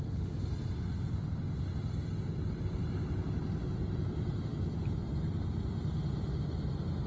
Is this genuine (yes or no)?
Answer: yes